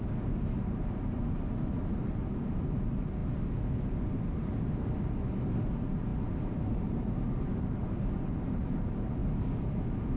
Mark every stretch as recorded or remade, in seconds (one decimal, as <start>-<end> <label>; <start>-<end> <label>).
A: 0.0-3.2 remade; 3.2-5.5 recorded; 5.5-9.2 remade; 9.2-10.2 recorded